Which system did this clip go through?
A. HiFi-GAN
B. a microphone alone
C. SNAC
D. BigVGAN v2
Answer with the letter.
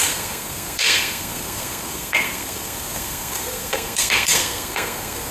C